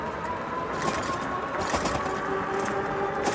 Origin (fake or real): real